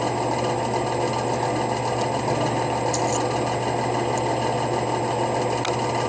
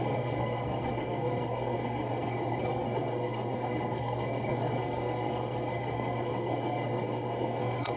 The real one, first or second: first